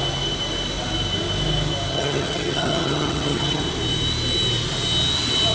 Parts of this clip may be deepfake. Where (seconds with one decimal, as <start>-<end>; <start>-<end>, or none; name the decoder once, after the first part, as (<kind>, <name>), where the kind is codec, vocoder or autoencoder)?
1.9-3.6 (vocoder, HiFi-GAN)

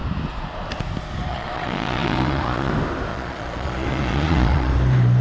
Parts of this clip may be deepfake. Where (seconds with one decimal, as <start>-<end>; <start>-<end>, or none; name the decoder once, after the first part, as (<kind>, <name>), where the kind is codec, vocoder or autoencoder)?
1.3-2.7 (vocoder, Vocos); 3.1-4.7